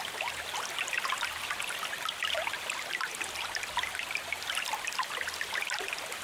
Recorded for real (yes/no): yes